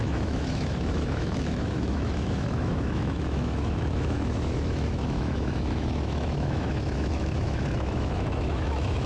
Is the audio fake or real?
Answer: fake